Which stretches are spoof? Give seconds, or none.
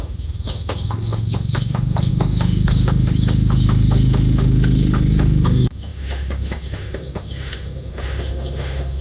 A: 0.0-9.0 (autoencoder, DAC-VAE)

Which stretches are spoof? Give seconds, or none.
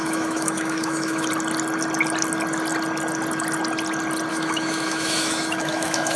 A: 0.0-1.3 (autoencoder, DAC-VAE); 4.3-6.2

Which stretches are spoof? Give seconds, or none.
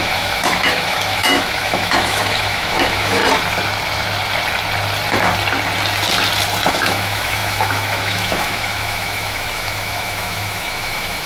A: 0.0-3.2 (autoencoder, DAC-VAE); 6.7-11.3